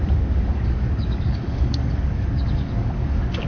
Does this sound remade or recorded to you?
remade